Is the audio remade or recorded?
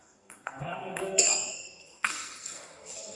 remade